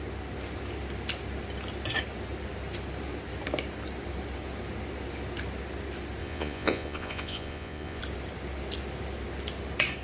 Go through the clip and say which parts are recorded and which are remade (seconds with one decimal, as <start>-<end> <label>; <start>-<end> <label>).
0.0-6.2 recorded; 6.2-8.0 remade; 8.0-10.0 recorded

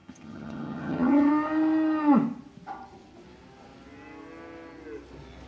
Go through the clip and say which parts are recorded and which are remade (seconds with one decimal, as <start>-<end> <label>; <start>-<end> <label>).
0.0-1.3 remade; 1.3-5.5 recorded